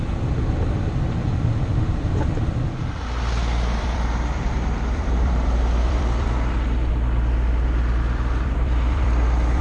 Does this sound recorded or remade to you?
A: remade